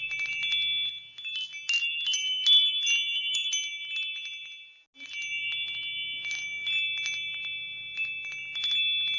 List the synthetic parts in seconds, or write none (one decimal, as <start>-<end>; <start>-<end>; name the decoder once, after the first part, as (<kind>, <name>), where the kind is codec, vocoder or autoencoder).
none